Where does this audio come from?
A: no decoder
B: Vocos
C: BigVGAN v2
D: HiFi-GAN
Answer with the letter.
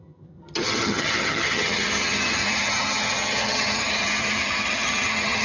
D